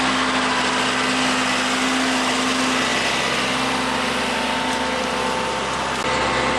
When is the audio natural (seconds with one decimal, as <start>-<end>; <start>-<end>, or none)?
0.0-6.6